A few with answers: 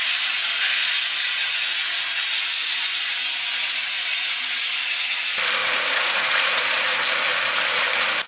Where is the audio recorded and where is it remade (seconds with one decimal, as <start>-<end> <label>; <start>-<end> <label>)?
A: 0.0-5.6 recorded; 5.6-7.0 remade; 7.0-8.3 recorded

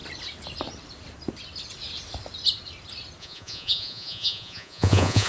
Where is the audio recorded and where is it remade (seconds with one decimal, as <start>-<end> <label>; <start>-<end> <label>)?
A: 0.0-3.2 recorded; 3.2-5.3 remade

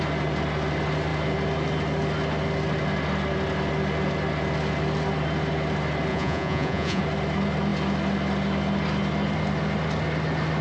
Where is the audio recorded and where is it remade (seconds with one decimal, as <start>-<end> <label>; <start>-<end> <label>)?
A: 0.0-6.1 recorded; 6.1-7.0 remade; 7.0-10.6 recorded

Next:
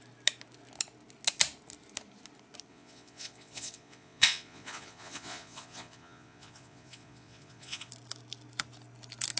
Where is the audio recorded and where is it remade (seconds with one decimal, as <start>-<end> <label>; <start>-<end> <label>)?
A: 0.0-2.7 recorded; 2.7-7.9 remade; 7.9-9.4 recorded

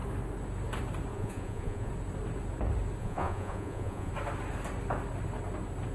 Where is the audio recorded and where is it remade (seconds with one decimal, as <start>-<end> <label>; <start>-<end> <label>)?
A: 0.0-1.1 recorded; 1.1-1.9 remade; 1.9-3.0 recorded; 3.0-4.1 remade; 4.1-5.9 recorded